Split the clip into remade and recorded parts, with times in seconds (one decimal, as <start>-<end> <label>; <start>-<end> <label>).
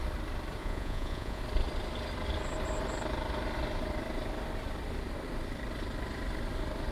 0.0-0.6 recorded; 0.6-1.4 remade; 1.4-6.9 recorded